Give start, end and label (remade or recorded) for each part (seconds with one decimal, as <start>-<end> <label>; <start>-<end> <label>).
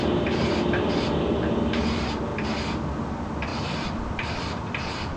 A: 0.0-0.9 remade; 0.9-3.5 recorded; 3.5-5.2 remade